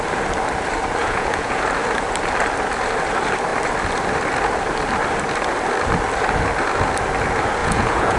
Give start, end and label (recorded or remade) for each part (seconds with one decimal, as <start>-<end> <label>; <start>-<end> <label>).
0.0-1.0 recorded; 1.0-1.6 remade; 1.6-7.6 recorded; 7.6-8.2 remade